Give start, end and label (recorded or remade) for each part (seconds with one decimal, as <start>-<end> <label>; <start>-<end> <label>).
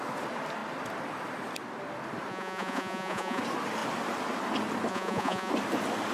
0.0-2.3 recorded; 2.3-3.4 remade; 3.4-4.9 recorded; 4.9-5.5 remade; 5.5-6.1 recorded